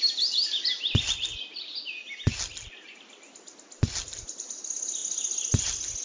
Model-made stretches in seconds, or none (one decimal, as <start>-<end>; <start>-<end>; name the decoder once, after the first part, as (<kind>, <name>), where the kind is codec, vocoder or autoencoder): none